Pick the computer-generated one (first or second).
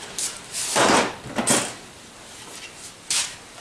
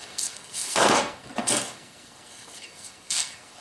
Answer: second